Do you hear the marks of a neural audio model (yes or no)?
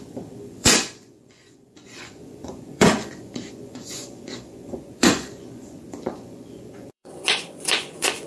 yes